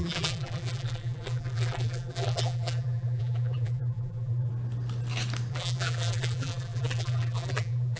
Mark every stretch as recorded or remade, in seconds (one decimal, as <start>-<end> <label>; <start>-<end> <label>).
0.0-4.5 remade; 4.5-5.5 recorded; 5.5-8.0 remade